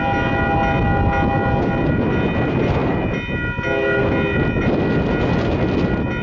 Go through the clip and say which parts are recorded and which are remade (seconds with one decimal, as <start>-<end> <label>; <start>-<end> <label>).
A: 0.0-6.2 recorded